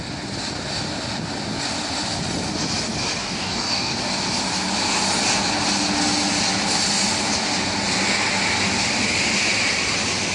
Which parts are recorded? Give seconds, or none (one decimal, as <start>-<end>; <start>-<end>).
0.0-3.2; 4.0-10.3